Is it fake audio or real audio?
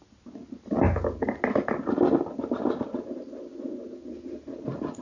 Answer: real